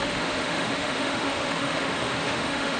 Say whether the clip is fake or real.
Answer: fake